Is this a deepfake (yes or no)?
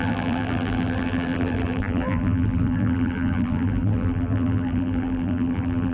yes